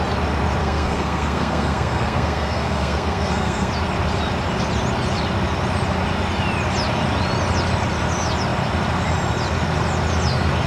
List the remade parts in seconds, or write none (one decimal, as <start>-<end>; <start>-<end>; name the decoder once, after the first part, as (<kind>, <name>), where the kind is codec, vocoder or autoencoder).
0.6-3.7 (codec, SNAC)